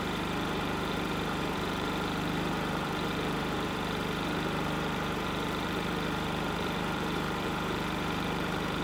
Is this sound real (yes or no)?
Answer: no